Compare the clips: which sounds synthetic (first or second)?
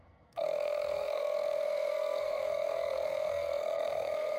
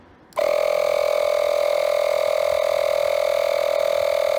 first